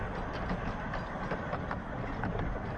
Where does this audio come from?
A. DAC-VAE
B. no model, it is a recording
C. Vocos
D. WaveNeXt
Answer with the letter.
B